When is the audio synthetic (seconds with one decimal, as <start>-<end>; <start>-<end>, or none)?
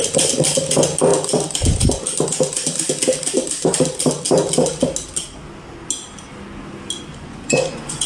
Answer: 7.1-8.1